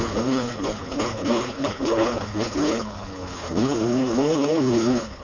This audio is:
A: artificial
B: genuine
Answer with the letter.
A